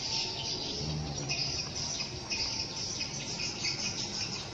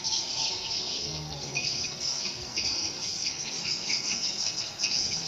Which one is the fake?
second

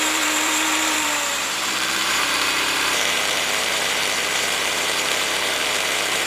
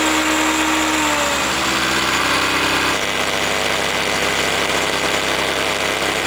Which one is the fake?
first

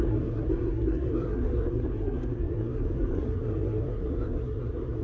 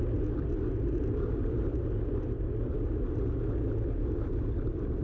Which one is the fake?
first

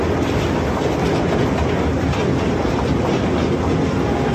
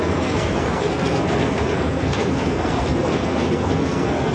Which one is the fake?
second